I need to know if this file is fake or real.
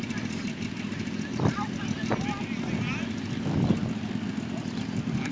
real